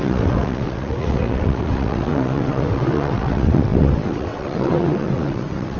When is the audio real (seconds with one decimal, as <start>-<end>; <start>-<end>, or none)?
none